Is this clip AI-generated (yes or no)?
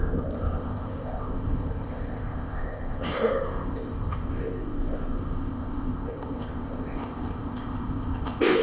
yes